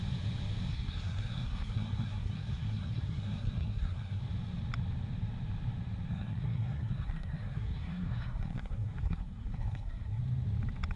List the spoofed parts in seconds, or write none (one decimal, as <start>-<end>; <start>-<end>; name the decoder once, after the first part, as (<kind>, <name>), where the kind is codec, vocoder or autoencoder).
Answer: 0.7-4.2 (codec, SNAC); 6.1-10.2